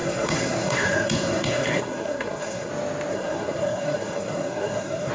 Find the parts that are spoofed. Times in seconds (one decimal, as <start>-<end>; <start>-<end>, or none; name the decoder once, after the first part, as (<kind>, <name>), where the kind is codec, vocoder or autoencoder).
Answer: 0.0-2.7 (codec, SNAC); 3.1-5.1